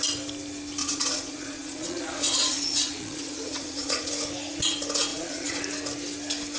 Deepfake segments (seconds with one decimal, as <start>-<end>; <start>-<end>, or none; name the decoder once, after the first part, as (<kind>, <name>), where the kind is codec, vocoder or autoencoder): 0.8-4.1 (vocoder, Vocos); 5.1-5.6